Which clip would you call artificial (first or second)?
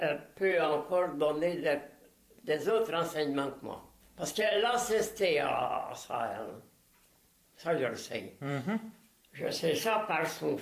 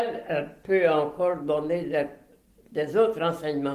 first